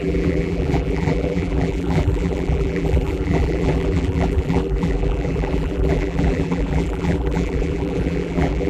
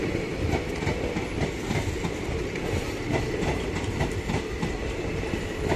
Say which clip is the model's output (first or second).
first